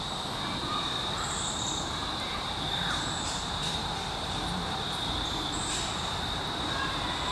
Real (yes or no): no